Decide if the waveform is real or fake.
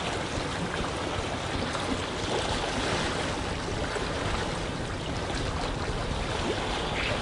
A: real